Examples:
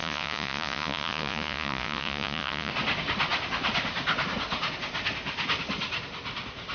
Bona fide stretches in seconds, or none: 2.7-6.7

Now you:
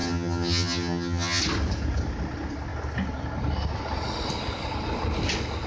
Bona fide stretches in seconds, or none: 1.4-5.7

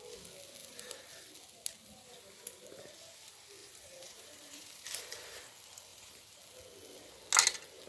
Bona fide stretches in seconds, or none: 0.0-0.6; 1.1-3.6; 5.4-5.9; 6.4-7.9

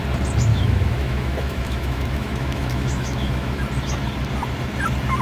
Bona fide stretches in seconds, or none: 0.0-0.5; 3.6-5.2

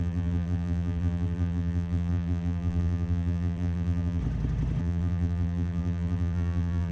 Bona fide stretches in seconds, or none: 4.2-4.8